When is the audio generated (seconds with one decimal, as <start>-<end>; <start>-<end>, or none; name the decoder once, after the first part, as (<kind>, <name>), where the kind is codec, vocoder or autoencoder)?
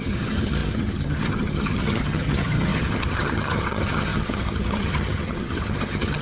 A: 0.0-6.2 (vocoder, HiFi-GAN)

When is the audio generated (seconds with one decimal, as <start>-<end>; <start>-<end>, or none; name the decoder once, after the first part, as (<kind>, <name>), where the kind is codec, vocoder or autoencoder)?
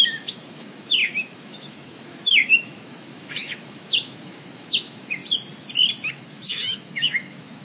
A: 0.0-5.2 (autoencoder, DAC-VAE); 6.1-7.6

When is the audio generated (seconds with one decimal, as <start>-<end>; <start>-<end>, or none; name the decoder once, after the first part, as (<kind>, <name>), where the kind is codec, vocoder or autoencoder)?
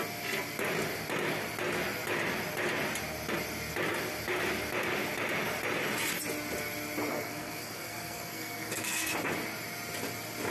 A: 7.1-9.1 (codec, SNAC)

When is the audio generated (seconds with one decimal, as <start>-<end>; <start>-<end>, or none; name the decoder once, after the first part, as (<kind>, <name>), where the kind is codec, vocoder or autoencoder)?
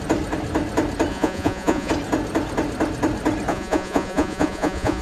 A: 1.1-1.9 (vocoder, Vocos); 3.5-5.0